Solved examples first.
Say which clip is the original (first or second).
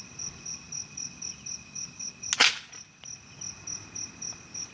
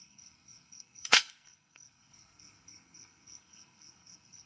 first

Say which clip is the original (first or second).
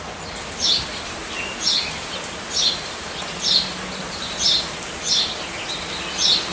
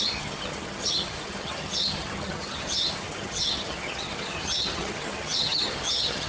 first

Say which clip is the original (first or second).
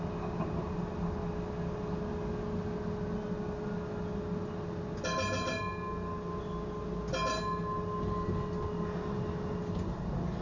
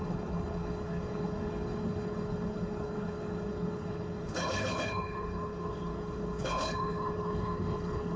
first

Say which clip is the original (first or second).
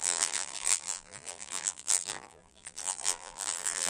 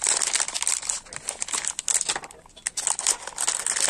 second